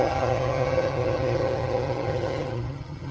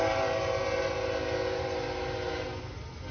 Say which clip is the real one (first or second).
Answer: second